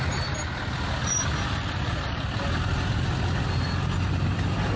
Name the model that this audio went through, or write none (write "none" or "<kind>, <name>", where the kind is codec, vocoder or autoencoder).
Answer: none